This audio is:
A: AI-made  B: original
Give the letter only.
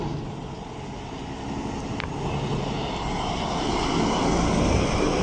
B